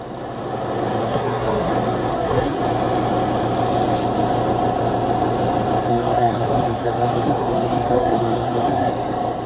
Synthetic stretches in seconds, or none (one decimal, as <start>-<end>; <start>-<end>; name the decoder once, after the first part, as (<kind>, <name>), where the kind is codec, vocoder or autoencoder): 1.0-1.7 (codec, SNAC); 2.1-2.6; 5.9-8.9